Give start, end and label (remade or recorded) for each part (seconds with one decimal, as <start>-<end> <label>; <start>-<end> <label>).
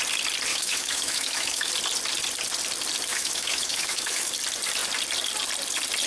0.0-0.5 recorded; 0.5-1.7 remade; 1.7-3.1 recorded; 3.1-4.3 remade; 4.3-6.1 recorded